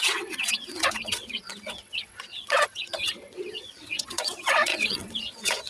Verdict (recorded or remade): remade